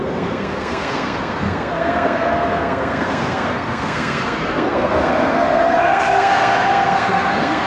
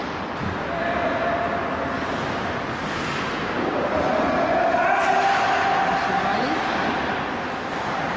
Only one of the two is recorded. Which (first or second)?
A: second